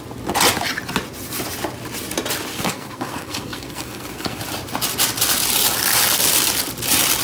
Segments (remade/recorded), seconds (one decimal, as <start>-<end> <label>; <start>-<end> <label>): 0.0-2.5 recorded; 2.5-4.4 remade; 4.4-7.2 recorded